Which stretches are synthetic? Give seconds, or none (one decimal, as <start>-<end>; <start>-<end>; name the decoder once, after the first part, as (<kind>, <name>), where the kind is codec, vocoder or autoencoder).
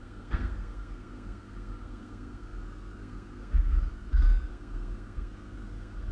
0.0-6.1 (codec, SNAC)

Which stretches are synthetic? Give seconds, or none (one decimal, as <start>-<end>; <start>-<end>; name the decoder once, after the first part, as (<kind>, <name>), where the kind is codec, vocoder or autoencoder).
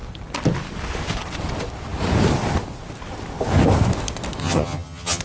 4.4-5.2 (vocoder, HiFi-GAN)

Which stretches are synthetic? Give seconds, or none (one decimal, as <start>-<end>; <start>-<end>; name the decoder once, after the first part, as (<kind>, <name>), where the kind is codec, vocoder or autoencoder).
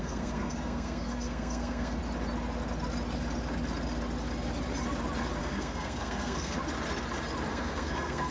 0.0-2.0 (codec, SNAC); 5.4-6.6; 7.5-8.3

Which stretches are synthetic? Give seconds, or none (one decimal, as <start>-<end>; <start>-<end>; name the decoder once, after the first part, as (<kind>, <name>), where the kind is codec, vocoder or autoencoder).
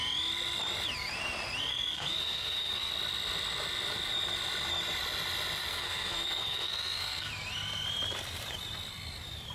1.7-2.9 (codec, SNAC); 5.7-7.3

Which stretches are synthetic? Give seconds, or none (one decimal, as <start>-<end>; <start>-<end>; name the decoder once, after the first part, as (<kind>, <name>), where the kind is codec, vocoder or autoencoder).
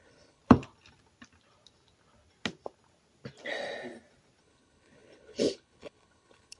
0.0-0.4 (codec, HILCodec); 4.4-6.6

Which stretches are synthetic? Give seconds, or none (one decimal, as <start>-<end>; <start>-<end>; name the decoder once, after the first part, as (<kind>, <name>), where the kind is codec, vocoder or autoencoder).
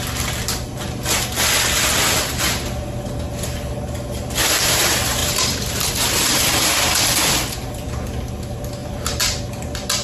5.2-8.3 (vocoder, BigVGAN v2); 8.8-9.4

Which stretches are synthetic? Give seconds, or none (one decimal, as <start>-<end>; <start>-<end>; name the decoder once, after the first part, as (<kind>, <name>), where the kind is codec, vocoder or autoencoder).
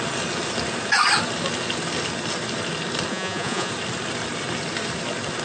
3.1-3.7 (vocoder, Vocos)